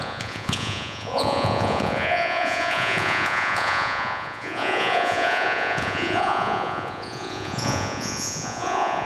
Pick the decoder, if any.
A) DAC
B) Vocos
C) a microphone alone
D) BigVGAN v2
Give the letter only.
B